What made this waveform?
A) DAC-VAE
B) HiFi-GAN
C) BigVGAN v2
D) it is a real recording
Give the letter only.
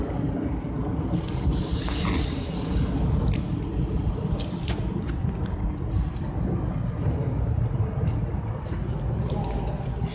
D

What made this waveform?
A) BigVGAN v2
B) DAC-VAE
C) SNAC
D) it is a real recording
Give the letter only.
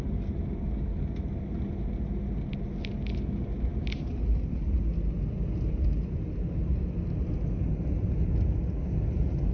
D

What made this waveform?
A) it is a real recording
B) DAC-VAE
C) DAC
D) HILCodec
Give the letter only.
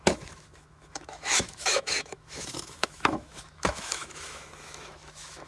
B